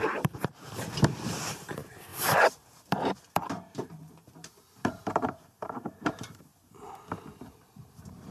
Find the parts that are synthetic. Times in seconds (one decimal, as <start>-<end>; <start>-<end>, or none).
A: 0.0-6.5; 7.5-8.3